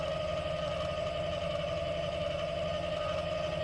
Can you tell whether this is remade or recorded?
recorded